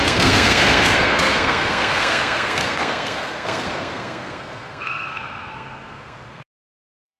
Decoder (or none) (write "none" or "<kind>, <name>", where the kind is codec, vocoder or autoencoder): codec, SNAC